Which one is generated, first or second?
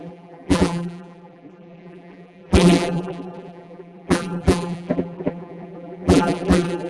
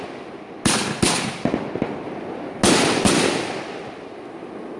first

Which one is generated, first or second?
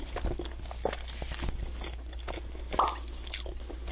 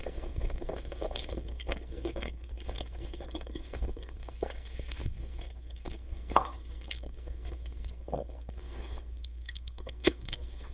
second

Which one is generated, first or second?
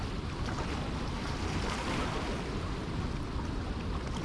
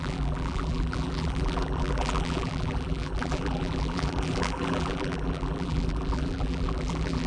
second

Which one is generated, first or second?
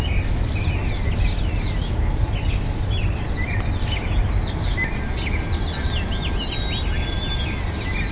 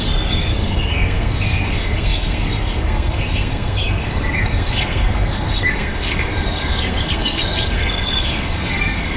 second